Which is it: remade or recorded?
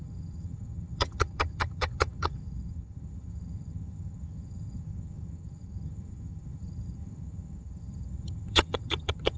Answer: remade